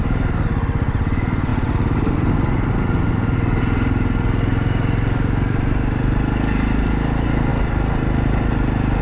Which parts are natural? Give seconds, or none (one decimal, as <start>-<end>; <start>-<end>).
0.0-9.0